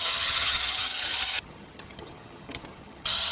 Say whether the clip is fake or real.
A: fake